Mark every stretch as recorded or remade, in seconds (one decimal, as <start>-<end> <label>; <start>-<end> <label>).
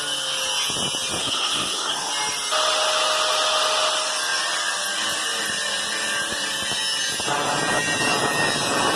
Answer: 0.0-1.2 recorded; 1.2-2.1 remade; 2.1-9.0 recorded